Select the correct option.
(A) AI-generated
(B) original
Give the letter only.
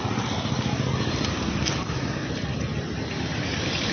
B